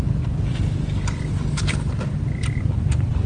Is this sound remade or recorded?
recorded